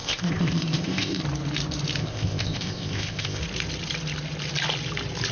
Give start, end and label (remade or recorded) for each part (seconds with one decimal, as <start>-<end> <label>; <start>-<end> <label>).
0.0-1.2 remade; 1.2-2.0 recorded; 2.0-3.4 remade; 3.4-5.3 recorded